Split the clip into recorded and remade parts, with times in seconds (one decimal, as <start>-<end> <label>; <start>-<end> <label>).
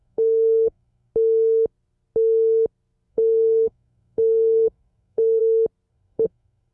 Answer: 0.0-1.1 remade; 1.1-3.1 recorded; 3.1-5.4 remade; 5.4-5.9 recorded; 5.9-6.7 remade